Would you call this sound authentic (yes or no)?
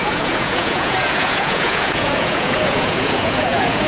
no